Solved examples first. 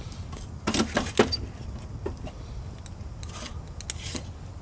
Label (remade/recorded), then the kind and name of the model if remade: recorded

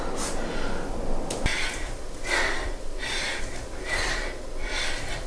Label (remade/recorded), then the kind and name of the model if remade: recorded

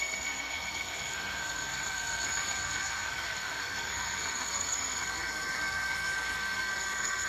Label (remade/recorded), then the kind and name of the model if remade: remade, codec, SNAC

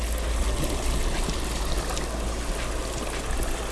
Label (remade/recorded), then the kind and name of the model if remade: recorded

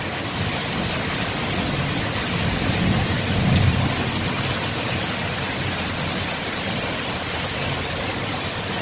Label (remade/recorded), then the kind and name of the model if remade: recorded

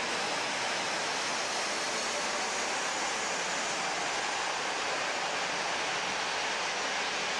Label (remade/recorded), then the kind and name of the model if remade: recorded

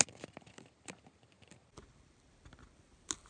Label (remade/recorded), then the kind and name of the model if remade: recorded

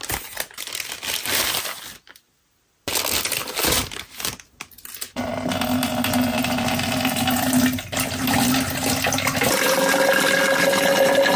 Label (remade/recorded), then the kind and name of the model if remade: recorded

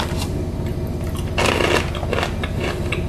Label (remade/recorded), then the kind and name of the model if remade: recorded